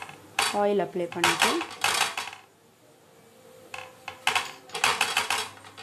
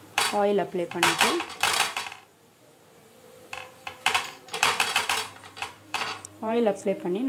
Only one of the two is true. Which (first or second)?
first